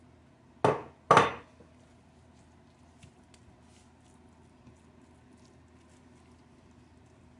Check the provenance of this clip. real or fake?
real